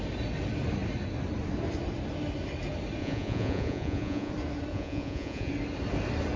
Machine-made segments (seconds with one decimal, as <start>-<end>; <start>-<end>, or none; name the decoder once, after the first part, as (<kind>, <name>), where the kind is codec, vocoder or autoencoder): 3.0-4.3 (vocoder, Vocos); 4.7-5.5